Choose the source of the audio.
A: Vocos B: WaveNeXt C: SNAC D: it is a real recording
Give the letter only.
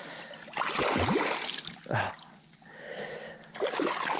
D